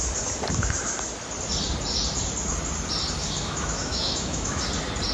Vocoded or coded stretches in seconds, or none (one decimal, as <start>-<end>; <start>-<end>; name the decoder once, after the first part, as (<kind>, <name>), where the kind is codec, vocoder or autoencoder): 3.2-4.6 (autoencoder, DAC-VAE)